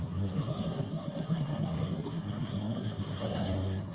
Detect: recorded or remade remade